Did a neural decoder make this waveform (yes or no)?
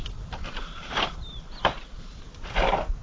no